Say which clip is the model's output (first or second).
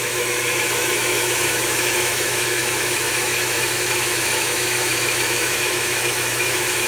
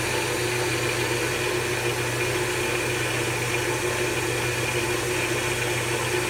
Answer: first